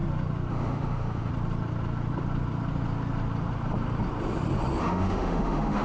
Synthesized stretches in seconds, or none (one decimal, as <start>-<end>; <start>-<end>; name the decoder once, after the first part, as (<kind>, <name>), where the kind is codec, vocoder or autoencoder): 0.5-1.3 (autoencoder, DAC-VAE); 4.8-5.8